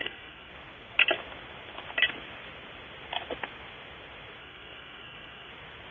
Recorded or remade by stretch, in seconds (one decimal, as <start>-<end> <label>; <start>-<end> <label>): 0.0-0.5 remade; 0.5-4.4 recorded; 4.4-5.5 remade; 5.5-5.9 recorded